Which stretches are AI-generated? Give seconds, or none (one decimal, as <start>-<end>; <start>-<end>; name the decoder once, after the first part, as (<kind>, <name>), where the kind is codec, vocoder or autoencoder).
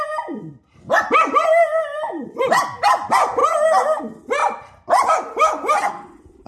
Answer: 1.6-2.5 (vocoder, BigVGAN v2); 3.4-4.0